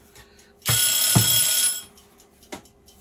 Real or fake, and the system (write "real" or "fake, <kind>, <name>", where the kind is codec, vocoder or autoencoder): real